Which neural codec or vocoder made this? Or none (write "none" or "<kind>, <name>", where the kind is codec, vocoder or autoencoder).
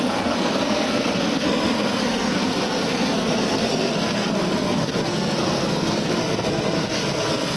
codec, SNAC